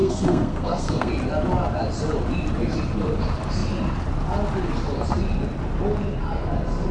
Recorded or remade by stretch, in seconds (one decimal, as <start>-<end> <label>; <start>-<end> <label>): 0.0-1.1 remade; 1.1-6.9 recorded